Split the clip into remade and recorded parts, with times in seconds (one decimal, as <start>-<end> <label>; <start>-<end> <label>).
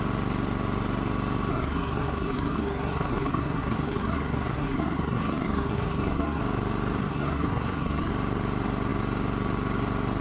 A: 0.0-1.5 recorded; 1.5-6.4 remade; 6.4-7.0 recorded; 7.0-8.1 remade; 8.1-10.2 recorded